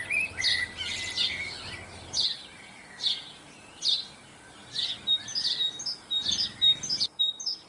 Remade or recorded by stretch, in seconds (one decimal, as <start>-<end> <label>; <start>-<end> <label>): 0.0-7.7 recorded